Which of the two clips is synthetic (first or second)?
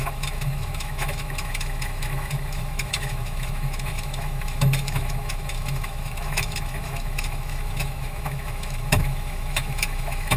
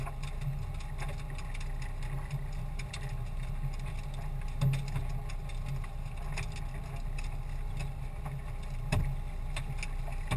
first